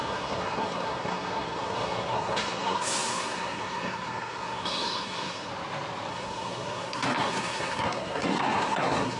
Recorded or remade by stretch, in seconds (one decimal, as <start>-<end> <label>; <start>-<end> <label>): 0.0-5.5 remade; 5.5-6.1 recorded; 6.1-9.2 remade